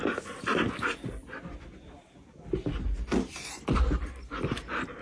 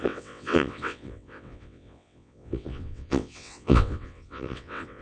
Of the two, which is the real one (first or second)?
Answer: first